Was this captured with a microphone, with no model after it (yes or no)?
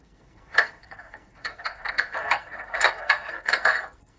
no